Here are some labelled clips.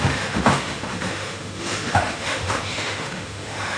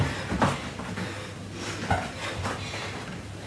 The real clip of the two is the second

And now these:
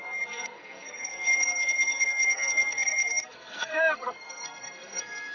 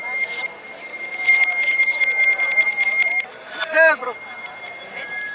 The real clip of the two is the second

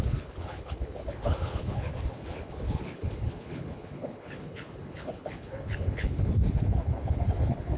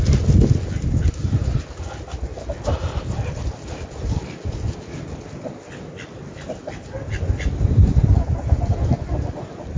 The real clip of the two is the second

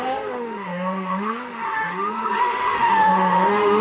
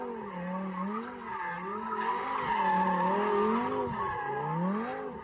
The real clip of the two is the second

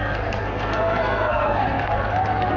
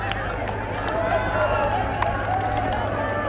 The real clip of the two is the second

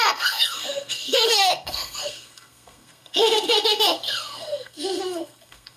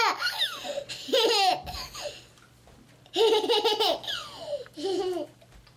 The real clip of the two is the second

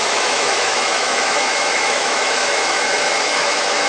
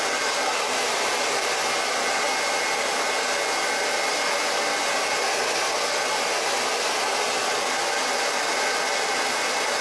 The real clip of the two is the second